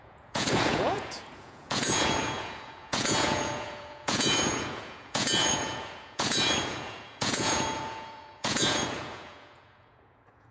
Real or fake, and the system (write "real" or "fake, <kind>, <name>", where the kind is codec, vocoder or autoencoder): fake, vocoder, Vocos